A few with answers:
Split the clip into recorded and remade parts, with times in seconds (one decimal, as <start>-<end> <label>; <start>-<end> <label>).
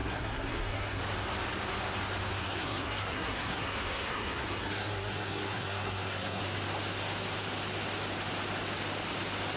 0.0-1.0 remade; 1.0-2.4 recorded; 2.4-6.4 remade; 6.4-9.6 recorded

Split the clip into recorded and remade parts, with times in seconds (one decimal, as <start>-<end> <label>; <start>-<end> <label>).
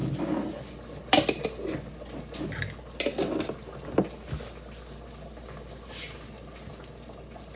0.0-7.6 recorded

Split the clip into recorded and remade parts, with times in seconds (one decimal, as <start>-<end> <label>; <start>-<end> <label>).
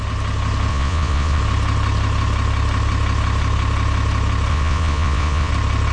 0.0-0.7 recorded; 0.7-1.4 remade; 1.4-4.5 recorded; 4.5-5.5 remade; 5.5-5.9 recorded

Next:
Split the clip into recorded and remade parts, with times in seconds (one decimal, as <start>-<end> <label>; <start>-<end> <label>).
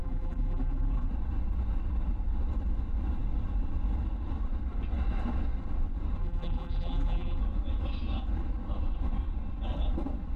0.0-1.1 remade; 1.1-6.2 recorded; 6.2-7.4 remade; 7.4-10.4 recorded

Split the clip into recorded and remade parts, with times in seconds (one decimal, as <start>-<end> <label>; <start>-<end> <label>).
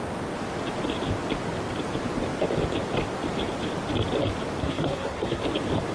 0.0-4.6 recorded; 4.6-5.4 remade; 5.4-5.9 recorded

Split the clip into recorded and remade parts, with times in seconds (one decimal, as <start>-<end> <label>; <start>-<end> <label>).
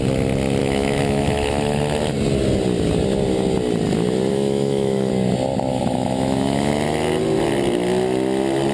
0.0-0.6 recorded; 0.6-1.8 remade; 1.8-4.3 recorded; 4.3-5.1 remade; 5.1-5.7 recorded; 5.7-6.7 remade; 6.7-8.7 recorded